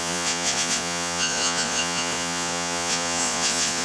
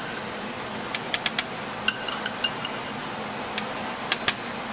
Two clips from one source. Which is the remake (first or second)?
first